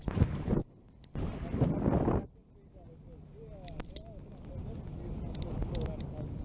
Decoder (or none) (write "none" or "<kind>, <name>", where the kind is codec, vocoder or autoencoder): none